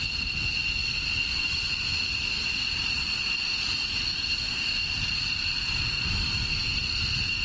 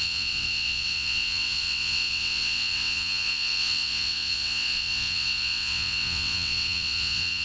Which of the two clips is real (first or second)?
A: first